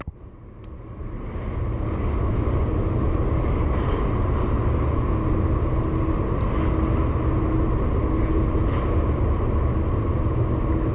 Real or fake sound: real